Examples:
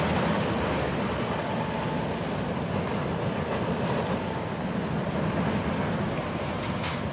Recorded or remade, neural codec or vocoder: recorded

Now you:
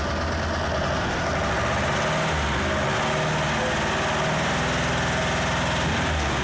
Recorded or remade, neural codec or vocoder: recorded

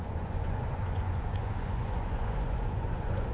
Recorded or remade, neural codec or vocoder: remade, vocoder, Vocos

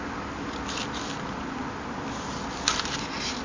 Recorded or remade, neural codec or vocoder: recorded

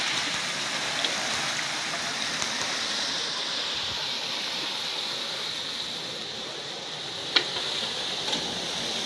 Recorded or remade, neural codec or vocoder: recorded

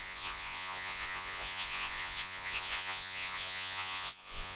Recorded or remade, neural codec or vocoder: remade, vocoder, Vocos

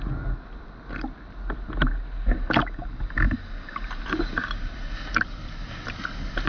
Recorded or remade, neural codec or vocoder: recorded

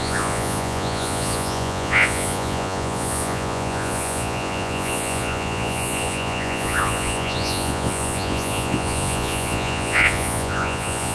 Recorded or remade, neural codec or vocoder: remade, vocoder, Vocos